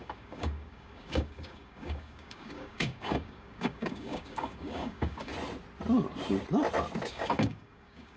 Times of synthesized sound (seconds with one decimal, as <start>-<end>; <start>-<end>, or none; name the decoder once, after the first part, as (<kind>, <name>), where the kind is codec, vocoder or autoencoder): 0.0-5.3 (codec, DAC); 7.1-8.2